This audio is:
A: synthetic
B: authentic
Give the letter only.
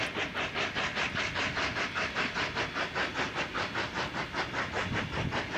B